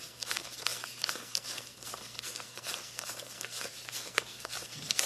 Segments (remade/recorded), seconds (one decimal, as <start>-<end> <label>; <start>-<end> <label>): 0.0-5.1 remade